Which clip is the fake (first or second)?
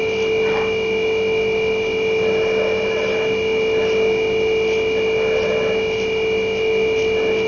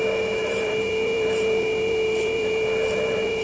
second